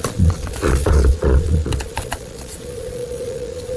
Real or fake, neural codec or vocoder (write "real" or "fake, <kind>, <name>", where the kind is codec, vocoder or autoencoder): fake, vocoder, Vocos